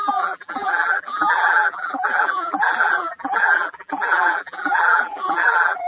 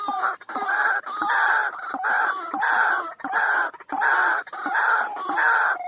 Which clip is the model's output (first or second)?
first